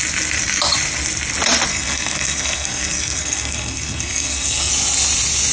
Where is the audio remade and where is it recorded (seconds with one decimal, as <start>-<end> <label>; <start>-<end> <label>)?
0.0-1.7 recorded; 1.7-4.7 remade; 4.7-5.5 recorded